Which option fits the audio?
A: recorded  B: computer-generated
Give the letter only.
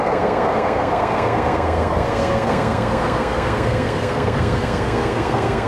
B